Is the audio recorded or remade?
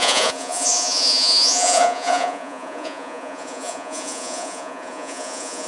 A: remade